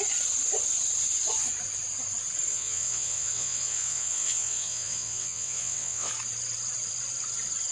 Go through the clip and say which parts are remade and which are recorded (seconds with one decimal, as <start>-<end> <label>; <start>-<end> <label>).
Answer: 0.0-2.5 recorded; 2.5-6.1 remade; 6.1-7.7 recorded